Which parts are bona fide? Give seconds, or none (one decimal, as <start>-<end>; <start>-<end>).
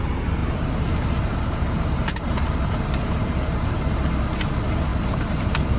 0.0-0.4; 3.9-4.9